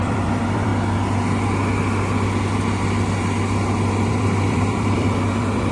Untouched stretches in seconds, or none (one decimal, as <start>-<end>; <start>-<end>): 0.7-4.1